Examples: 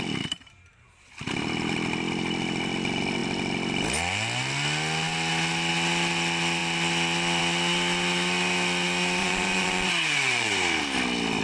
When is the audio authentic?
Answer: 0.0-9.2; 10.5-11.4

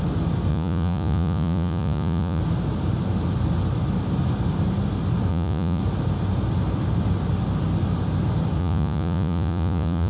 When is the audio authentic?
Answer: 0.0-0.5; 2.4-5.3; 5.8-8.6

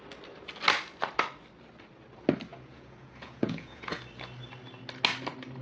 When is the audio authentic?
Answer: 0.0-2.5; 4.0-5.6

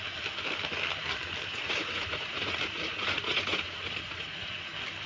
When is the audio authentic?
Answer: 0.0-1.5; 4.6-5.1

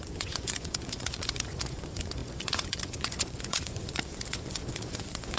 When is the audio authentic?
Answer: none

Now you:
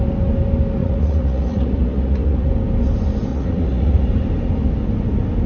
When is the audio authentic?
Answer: 0.0-0.8; 2.5-3.3; 4.1-5.5